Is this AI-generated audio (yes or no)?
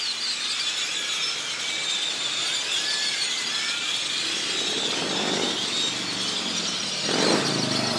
no